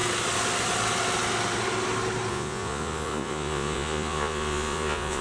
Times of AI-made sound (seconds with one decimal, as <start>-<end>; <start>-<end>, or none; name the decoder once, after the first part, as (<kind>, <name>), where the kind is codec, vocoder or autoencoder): 2.3-5.2 (vocoder, Vocos)